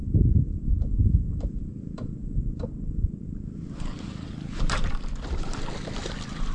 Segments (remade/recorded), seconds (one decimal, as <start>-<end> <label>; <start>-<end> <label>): 0.0-1.0 recorded; 1.0-4.9 remade; 4.9-6.5 recorded